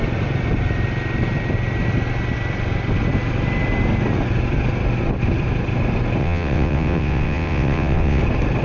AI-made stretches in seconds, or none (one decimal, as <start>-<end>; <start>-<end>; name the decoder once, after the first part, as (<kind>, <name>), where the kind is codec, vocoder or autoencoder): 6.2-8.2 (vocoder, WaveNeXt)